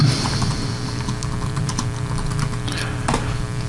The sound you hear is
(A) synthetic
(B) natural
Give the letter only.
A